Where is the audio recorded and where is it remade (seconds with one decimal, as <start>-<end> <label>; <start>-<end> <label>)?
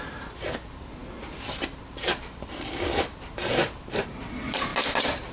0.0-4.7 remade; 4.7-5.3 recorded